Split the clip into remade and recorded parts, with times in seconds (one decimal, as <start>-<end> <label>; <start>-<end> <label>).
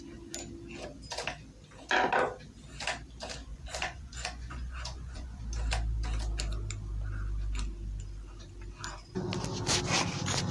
0.0-3.5 recorded; 3.5-5.4 remade; 5.4-10.5 recorded